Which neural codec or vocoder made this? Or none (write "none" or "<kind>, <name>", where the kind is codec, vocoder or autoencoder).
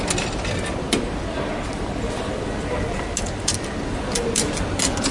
none